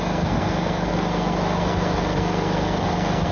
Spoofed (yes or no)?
yes